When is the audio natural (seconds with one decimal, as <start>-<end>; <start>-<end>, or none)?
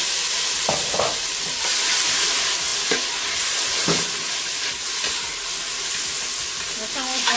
0.0-7.4